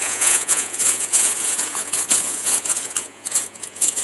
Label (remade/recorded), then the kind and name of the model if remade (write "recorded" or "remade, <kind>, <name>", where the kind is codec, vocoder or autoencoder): remade, vocoder, Vocos